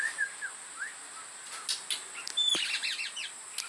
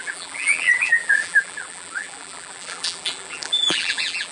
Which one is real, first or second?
first